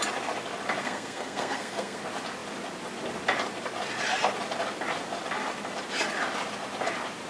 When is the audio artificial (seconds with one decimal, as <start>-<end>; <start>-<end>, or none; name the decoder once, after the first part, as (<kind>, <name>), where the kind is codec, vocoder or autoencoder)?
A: 0.8-2.0 (codec, SNAC)

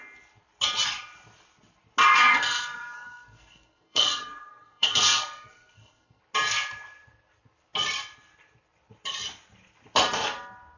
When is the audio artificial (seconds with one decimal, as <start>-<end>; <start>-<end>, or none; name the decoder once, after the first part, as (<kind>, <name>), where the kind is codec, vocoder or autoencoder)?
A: 2.0-6.2 (codec, SNAC)